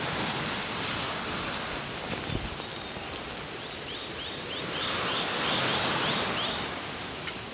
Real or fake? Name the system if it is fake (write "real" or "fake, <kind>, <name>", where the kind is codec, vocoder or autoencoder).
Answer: real